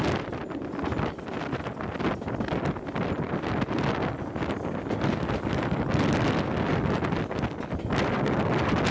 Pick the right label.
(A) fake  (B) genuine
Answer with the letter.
B